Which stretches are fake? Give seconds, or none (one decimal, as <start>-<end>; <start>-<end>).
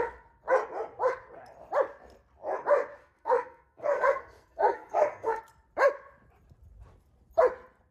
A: 3.0-5.4